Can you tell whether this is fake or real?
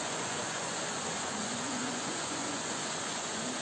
fake